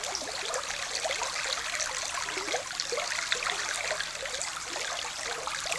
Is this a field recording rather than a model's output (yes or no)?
yes